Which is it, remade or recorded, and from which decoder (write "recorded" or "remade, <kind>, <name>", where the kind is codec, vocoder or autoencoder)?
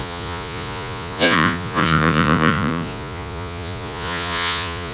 remade, vocoder, Vocos